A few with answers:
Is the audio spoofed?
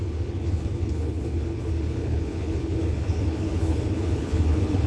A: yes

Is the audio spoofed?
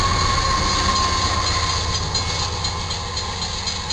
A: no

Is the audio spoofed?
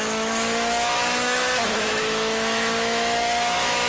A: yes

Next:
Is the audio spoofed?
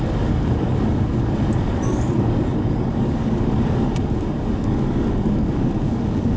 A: yes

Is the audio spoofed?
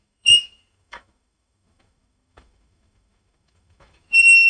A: yes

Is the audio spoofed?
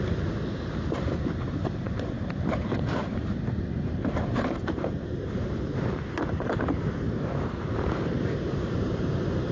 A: yes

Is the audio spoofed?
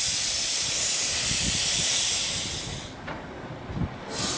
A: no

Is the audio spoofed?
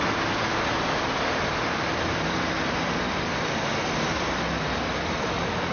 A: no